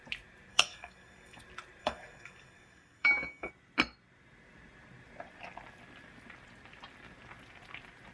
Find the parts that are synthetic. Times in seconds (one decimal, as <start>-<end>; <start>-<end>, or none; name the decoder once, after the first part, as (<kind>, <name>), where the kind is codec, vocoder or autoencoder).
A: 0.5-1.4 (codec, DAC); 1.8-3.5